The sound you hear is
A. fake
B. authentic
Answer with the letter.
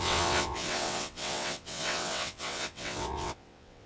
A